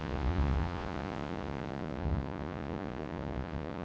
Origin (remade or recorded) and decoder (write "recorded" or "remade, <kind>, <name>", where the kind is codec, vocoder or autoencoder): remade, vocoder, Vocos